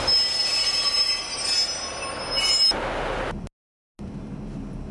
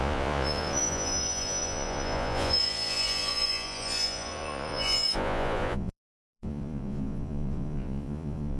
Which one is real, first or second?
first